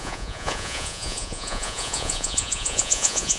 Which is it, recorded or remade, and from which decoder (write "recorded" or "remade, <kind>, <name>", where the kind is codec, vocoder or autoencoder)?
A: remade, vocoder, Vocos